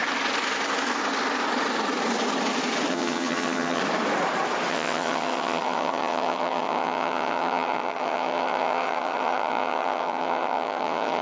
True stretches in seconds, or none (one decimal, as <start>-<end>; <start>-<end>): 0.0-2.9; 3.8-4.7